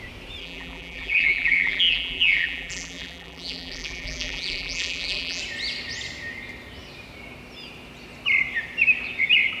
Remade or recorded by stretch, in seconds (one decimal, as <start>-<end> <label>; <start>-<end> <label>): 0.0-0.4 recorded; 0.4-5.4 remade; 5.4-9.6 recorded